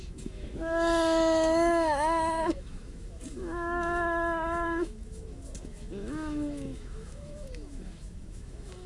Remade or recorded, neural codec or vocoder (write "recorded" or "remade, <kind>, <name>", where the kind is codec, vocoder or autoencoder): remade, autoencoder, DAC-VAE